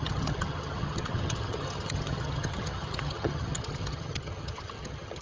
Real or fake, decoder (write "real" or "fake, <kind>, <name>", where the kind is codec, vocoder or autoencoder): fake, vocoder, HiFi-GAN